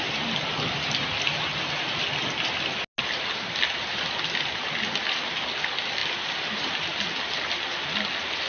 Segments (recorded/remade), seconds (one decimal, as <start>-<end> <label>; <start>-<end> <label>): 0.0-6.0 recorded; 6.0-7.0 remade; 7.0-8.5 recorded